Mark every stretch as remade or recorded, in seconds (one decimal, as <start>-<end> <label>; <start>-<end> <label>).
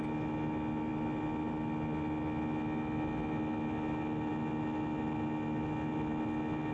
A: 0.0-6.7 recorded